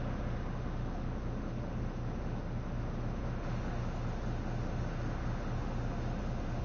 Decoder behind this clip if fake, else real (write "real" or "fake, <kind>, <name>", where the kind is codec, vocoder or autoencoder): fake, autoencoder, DAC-VAE